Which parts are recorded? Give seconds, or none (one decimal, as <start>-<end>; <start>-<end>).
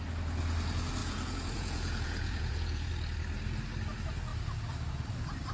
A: 0.0-1.0; 2.9-5.5